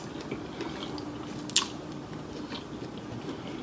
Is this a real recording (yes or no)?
yes